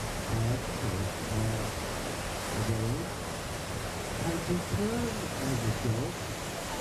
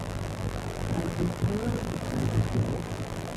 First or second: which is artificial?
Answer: second